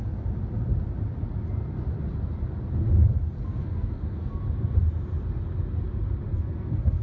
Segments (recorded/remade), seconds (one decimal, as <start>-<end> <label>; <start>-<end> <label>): 0.0-3.6 recorded; 3.6-4.4 remade; 4.4-6.3 recorded; 6.3-7.0 remade